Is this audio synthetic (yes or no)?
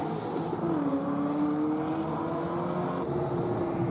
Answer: no